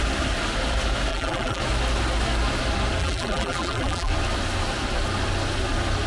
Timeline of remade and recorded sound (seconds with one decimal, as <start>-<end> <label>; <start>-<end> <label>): 0.0-1.1 recorded; 1.1-1.6 remade; 1.6-3.0 recorded; 3.0-4.1 remade; 4.1-6.1 recorded